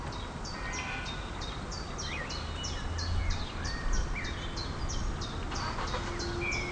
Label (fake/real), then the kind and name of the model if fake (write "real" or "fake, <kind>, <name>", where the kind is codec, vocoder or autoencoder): real